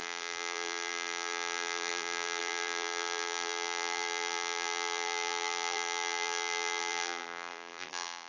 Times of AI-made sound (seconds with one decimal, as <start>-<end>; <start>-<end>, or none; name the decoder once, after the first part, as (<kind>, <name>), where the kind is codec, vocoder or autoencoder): 0.0-8.3 (vocoder, BigVGAN v2)